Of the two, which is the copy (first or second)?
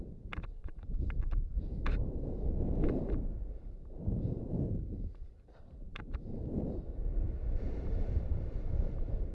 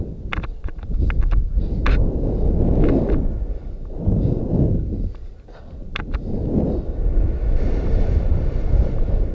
first